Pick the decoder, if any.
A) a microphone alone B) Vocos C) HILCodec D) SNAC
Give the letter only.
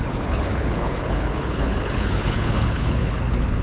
C